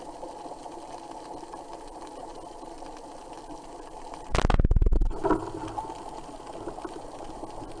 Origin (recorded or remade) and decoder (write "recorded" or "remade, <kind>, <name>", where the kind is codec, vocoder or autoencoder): recorded